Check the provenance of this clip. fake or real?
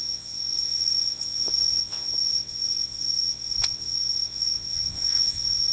fake